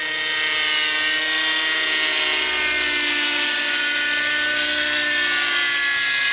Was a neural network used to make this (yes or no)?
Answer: no